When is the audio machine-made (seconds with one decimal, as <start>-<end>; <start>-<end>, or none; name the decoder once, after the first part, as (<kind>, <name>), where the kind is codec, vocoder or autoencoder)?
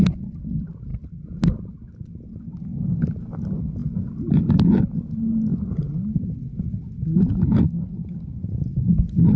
3.8-4.7 (vocoder, BigVGAN v2)